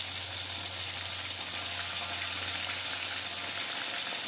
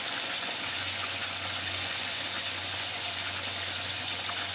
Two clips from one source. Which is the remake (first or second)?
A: second